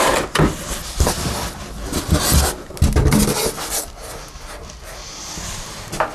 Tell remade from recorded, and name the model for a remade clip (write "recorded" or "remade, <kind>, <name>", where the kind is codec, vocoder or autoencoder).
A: recorded